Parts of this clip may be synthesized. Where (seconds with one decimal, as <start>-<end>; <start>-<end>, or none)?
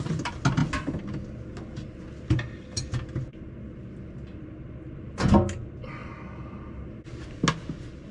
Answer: none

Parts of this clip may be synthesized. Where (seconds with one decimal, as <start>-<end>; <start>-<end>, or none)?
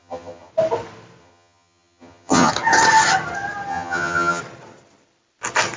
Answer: 0.0-0.5; 1.2-2.5; 3.7-4.4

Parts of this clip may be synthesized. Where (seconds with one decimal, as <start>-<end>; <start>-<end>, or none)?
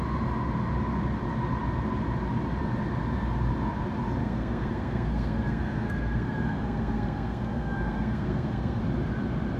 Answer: 4.2-8.8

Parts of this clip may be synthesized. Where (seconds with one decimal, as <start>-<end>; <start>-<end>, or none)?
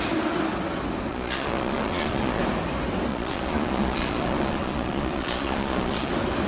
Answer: 1.1-2.4; 3.1-6.1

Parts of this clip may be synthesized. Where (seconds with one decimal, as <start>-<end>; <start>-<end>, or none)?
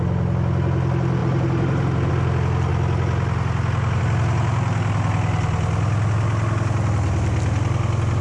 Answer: 1.2-2.1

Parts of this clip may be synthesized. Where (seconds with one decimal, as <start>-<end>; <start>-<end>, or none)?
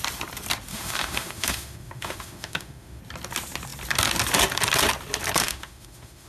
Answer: 0.7-3.0; 5.4-6.3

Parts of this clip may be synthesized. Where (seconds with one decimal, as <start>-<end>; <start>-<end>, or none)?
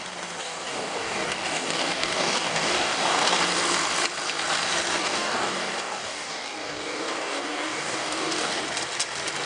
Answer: 0.4-3.4; 5.0-8.6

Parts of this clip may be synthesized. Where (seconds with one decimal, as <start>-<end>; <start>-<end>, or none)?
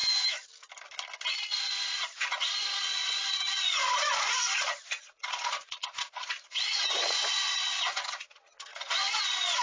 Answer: 1.3-9.6